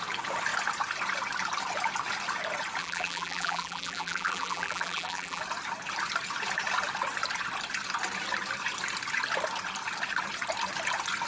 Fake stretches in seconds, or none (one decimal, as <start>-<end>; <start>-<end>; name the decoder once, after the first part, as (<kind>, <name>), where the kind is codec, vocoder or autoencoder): 2.8-5.4 (vocoder, BigVGAN v2)